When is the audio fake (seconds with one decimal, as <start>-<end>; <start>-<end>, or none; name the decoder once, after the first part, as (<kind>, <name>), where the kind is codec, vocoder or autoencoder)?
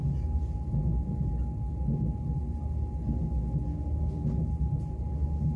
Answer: none